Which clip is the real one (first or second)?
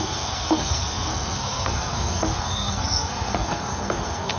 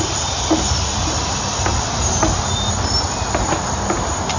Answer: second